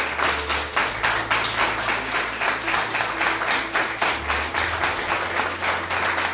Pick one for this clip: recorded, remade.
recorded